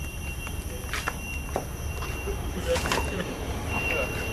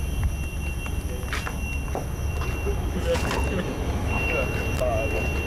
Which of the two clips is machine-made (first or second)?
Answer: first